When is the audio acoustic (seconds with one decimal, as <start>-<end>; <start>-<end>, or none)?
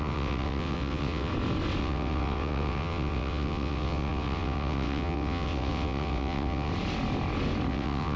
1.3-1.8; 6.7-7.7